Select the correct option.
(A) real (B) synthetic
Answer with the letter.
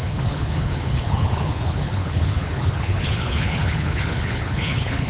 B